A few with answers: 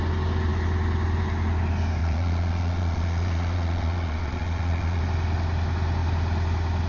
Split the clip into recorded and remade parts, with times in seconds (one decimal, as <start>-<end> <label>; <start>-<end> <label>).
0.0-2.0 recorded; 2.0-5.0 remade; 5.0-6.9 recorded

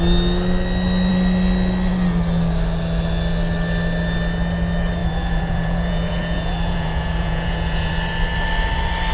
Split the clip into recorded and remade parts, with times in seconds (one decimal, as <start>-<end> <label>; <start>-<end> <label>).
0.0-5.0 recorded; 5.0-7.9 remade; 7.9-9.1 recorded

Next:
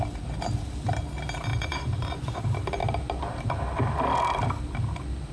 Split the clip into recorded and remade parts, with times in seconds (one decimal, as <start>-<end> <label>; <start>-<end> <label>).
0.0-1.5 recorded; 1.5-2.4 remade; 2.4-5.3 recorded

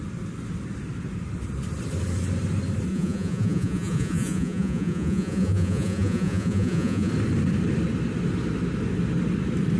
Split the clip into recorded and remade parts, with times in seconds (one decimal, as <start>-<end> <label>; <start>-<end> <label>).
0.0-2.9 recorded; 2.9-7.1 remade; 7.1-9.8 recorded

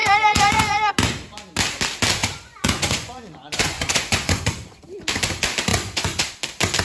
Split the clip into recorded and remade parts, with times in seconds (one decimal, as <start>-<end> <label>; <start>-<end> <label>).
0.0-0.9 remade; 0.9-2.2 recorded; 2.2-4.8 remade; 4.8-5.7 recorded; 5.7-6.3 remade; 6.3-6.8 recorded